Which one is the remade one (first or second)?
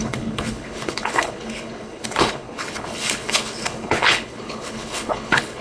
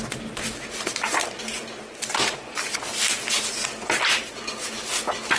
first